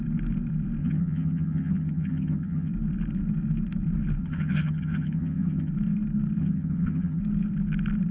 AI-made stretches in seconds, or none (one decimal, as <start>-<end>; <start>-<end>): 0.8-2.7; 4.2-5.7; 6.4-7.2